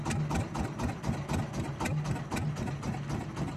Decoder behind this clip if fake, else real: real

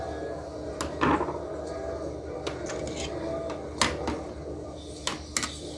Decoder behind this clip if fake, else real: real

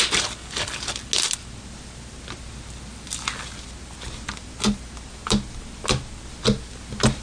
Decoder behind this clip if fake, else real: real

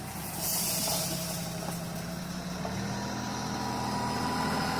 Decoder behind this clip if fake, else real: real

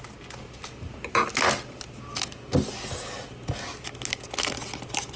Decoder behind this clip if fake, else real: real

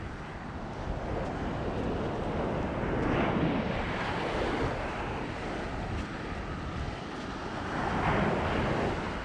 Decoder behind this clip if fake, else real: real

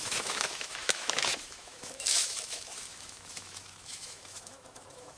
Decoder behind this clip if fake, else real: fake, autoencoder, DAC-VAE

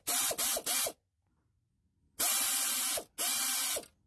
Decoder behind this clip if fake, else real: real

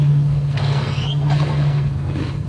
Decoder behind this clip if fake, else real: fake, codec, SNAC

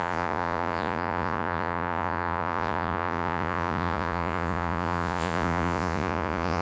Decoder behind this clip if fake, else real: fake, vocoder, Vocos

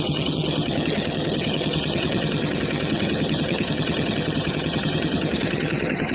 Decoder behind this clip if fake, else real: fake, vocoder, HiFi-GAN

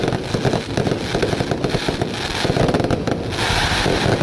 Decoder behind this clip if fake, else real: real